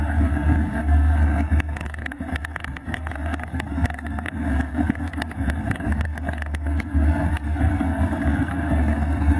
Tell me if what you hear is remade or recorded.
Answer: remade